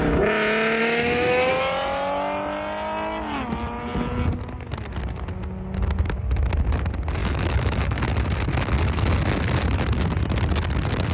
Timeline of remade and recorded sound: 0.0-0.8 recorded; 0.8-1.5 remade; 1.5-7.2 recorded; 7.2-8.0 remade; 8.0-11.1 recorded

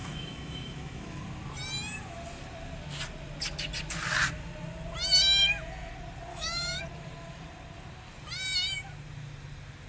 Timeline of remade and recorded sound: 0.0-1.2 remade; 1.2-6.3 recorded; 6.3-6.8 remade; 6.8-9.9 recorded

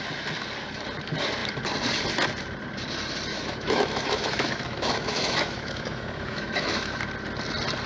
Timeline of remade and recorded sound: 0.0-3.3 recorded; 3.3-7.0 remade; 7.0-7.9 recorded

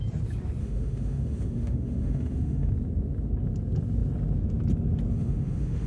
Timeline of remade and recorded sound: 0.0-0.6 recorded; 0.6-2.7 remade; 2.7-5.1 recorded; 5.1-5.9 remade

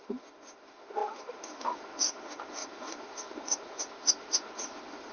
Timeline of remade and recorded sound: 0.0-5.1 remade